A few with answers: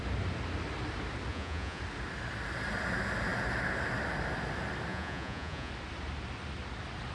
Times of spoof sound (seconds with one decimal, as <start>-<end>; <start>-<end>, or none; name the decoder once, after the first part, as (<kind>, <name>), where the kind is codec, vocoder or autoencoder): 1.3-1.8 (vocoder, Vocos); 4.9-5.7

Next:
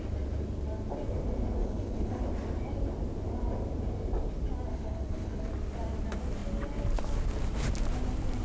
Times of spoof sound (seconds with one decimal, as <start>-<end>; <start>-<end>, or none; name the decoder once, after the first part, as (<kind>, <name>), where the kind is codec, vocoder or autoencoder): 1.6-2.2 (codec, HILCodec); 4.7-5.5

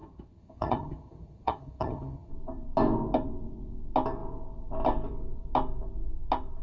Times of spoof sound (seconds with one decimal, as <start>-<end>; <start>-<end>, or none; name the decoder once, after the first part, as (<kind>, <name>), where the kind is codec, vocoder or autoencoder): 0.0-2.3 (vocoder, HiFi-GAN)